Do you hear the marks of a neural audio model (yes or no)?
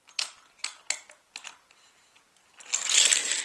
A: no